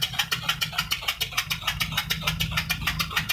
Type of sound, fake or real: real